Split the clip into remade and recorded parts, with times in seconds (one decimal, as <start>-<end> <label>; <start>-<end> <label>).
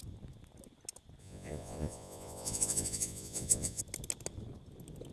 0.0-1.2 recorded; 1.2-3.8 remade; 3.8-5.1 recorded